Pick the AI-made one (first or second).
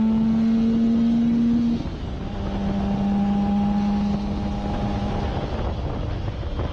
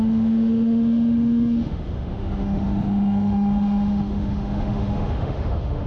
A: second